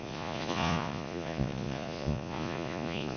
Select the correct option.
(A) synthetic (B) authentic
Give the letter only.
A